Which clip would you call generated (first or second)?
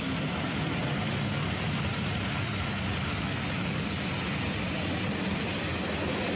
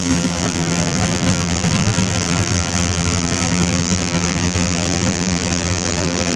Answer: second